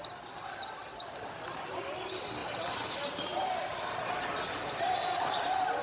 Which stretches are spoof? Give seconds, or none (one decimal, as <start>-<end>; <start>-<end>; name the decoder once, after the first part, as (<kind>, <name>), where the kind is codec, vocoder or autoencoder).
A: 2.4-4.2 (vocoder, BigVGAN v2)